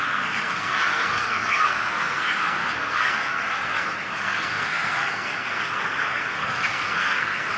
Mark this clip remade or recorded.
remade